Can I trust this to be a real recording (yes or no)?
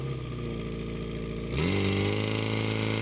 yes